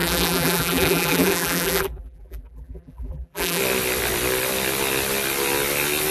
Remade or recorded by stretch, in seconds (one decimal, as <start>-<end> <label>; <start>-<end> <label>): 0.0-3.6 remade; 3.6-6.1 recorded